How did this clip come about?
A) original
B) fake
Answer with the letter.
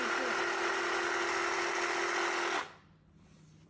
A